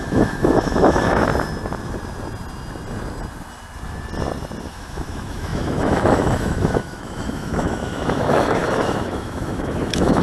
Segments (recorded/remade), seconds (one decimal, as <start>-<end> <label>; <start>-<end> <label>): 0.0-1.3 remade; 1.3-4.7 recorded; 4.7-10.2 remade